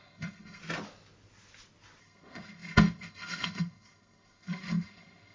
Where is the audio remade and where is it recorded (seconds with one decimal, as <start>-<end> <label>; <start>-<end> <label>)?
0.0-0.6 remade; 0.6-2.0 recorded; 2.0-5.3 remade